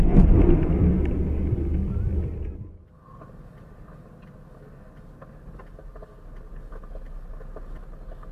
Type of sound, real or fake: real